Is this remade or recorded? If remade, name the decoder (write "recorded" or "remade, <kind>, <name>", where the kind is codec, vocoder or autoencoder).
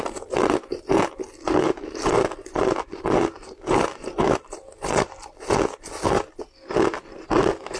recorded